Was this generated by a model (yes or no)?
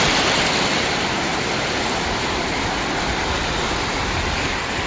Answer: no